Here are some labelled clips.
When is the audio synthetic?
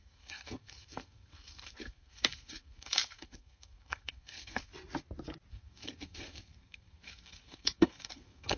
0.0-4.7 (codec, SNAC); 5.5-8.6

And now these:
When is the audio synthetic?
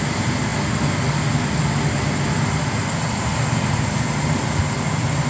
none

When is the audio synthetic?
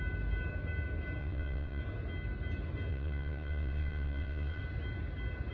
1.2-1.8 (vocoder, WaveNeXt); 2.9-4.6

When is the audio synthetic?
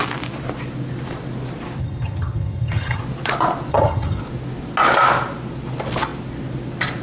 1.8-3.0 (vocoder, HiFi-GAN); 3.7-4.2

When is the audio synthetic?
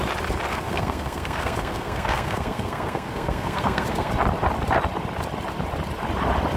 0.5-4.1 (codec, SNAC)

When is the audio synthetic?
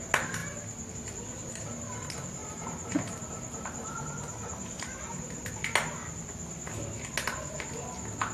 2.4-5.5 (vocoder, BigVGAN v2)